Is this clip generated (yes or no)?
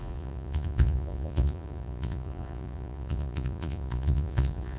yes